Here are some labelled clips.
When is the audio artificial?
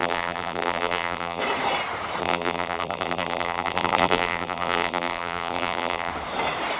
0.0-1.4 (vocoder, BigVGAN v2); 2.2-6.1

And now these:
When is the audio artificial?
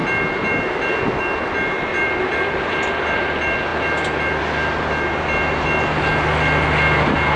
1.9-3.2 (vocoder, BigVGAN v2)